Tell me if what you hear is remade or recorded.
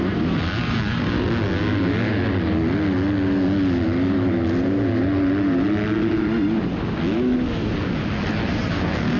recorded